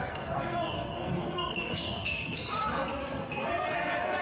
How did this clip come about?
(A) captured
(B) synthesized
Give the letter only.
B